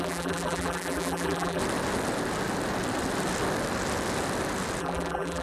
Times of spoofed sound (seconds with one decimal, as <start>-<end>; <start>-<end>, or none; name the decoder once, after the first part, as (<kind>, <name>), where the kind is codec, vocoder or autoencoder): 0.0-1.6 (vocoder, BigVGAN v2); 4.8-5.4